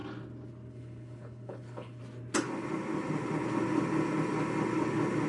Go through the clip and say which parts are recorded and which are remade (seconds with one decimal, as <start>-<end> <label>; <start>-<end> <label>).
0.0-0.7 recorded; 0.7-2.0 remade; 2.0-5.3 recorded